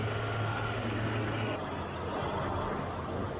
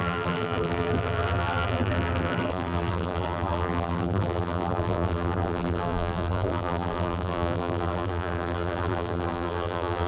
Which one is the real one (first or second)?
first